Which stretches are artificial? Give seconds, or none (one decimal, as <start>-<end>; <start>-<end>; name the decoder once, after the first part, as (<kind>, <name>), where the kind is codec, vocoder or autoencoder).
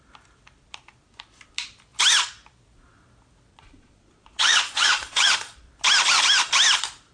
3.5-5.7 (vocoder, Vocos)